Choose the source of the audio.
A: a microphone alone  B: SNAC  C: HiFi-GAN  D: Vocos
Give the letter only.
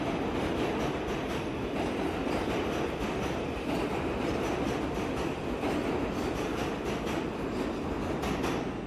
A